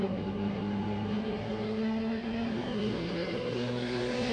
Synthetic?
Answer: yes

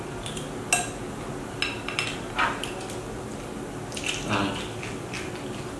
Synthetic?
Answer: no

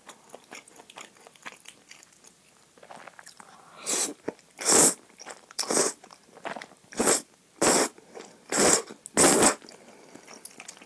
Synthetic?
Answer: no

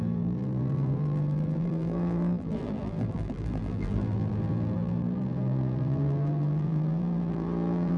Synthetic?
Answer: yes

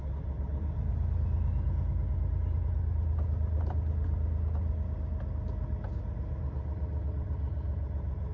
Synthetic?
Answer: no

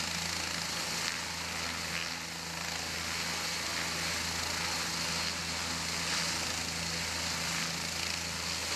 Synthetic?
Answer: no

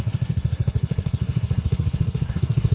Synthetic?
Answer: yes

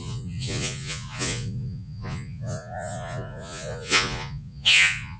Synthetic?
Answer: yes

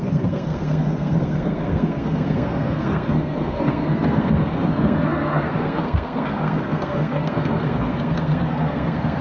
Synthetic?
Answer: yes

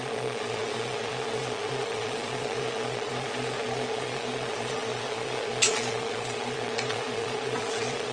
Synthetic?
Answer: yes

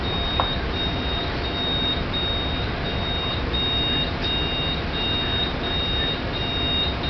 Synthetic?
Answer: no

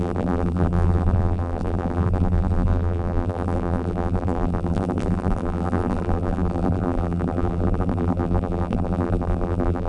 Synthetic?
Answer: yes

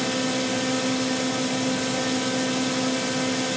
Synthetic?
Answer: no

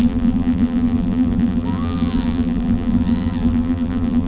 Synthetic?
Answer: yes